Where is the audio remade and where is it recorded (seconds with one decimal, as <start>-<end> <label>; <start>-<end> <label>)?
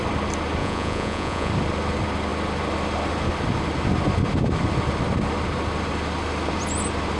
0.0-0.6 recorded; 0.6-1.5 remade; 1.5-7.2 recorded